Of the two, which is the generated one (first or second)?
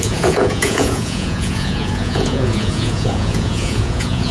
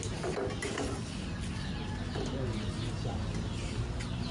first